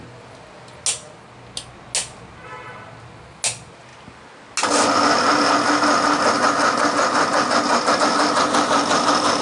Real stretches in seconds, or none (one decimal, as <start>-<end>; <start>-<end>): 0.0-9.4